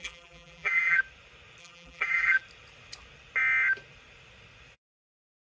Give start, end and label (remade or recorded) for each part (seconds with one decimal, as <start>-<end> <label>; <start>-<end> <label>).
0.0-1.0 remade; 1.0-1.6 recorded; 1.6-2.4 remade; 2.4-5.4 recorded